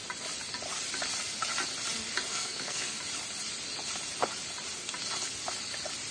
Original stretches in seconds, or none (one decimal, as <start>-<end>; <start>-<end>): 0.0-2.3; 3.0-6.1